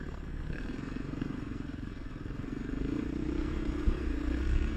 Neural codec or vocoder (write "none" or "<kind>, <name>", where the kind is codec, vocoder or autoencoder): codec, SNAC